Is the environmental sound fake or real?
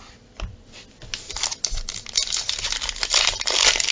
real